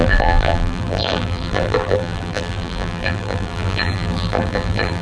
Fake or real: fake